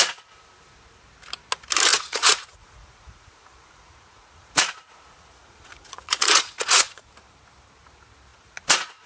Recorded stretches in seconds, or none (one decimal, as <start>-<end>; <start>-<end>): 0.0-1.9; 7.0-8.3